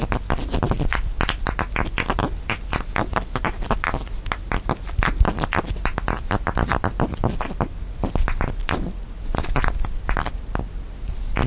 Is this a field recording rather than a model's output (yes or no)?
yes